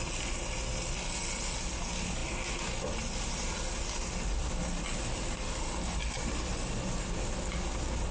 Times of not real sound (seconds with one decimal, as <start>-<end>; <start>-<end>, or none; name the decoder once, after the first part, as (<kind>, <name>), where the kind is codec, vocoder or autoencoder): none